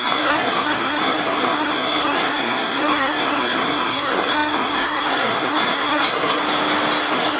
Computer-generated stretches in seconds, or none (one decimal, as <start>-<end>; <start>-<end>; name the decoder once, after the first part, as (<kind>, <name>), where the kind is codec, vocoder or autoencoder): 0.0-6.4 (codec, SNAC); 7.0-7.4